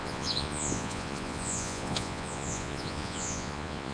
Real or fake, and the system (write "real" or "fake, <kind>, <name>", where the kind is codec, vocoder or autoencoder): fake, vocoder, Vocos